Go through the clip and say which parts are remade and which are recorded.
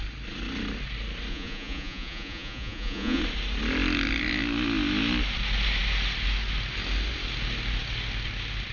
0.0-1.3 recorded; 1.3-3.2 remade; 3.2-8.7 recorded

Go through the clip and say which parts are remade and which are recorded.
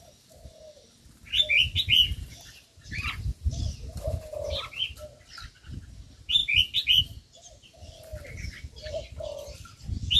0.0-2.1 recorded; 2.1-3.5 remade; 3.5-10.2 recorded